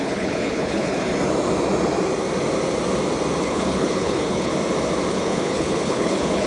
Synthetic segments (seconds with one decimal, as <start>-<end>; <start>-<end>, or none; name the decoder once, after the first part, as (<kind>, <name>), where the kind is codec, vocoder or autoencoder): 0.0-1.0 (codec, HILCodec); 3.4-4.5; 5.1-6.5